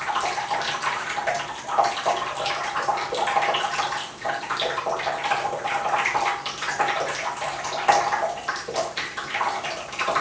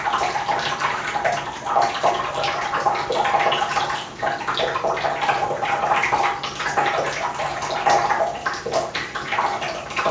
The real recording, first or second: second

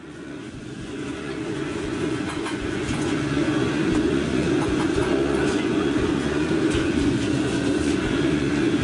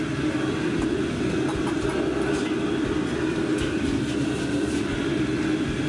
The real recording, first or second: second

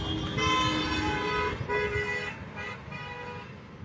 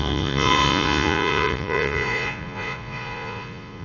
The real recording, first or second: first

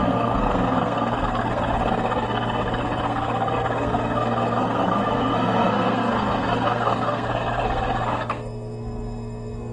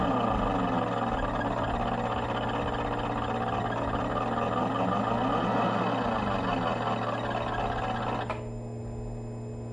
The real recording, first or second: second